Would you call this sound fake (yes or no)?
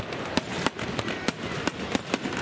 no